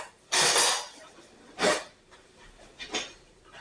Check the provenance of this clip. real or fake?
real